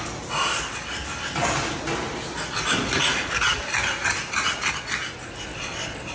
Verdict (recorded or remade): recorded